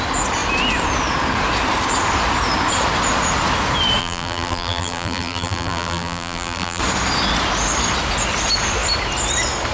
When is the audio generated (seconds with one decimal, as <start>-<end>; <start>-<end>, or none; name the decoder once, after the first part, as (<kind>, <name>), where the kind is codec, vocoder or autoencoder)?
4.0-6.8 (vocoder, BigVGAN v2)